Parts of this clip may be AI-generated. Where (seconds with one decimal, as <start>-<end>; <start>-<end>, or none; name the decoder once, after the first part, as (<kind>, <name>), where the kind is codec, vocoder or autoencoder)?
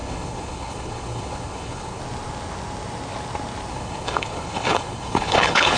0.0-2.0 (codec, HILCodec); 3.7-5.8